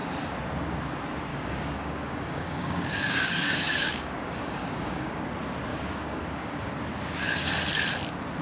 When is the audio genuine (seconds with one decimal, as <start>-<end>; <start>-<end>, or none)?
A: 0.0-1.3; 5.2-5.7; 6.7-8.4